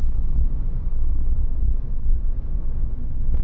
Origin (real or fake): fake